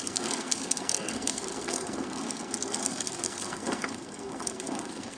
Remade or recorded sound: remade